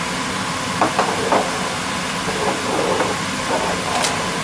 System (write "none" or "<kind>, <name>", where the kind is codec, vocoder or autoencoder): none